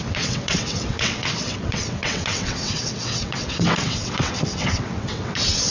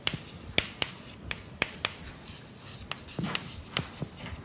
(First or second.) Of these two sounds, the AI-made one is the first